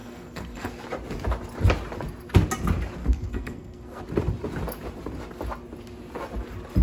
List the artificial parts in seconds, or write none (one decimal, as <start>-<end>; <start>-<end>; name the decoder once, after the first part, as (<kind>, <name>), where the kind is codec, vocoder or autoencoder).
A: 0.0-0.7 (codec, SNAC); 3.0-4.0